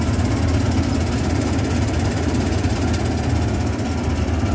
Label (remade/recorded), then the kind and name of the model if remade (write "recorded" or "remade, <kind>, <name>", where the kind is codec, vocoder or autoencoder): recorded